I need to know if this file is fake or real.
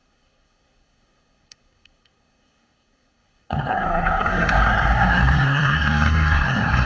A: fake